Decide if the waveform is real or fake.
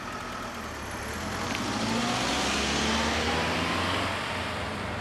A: real